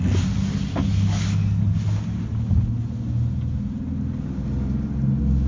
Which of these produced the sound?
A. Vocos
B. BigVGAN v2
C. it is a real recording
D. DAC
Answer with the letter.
C